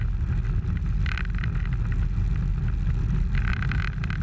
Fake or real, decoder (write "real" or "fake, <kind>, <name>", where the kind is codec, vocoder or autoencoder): real